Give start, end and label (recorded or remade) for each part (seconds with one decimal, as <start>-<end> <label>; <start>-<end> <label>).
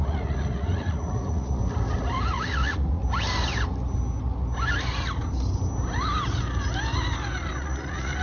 0.0-1.6 remade; 1.6-2.3 recorded; 2.3-3.0 remade; 3.0-7.6 recorded; 7.6-8.2 remade